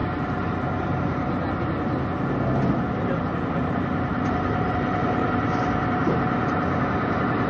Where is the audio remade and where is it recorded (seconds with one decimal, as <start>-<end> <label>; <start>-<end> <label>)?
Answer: 0.0-2.9 recorded; 2.9-7.5 remade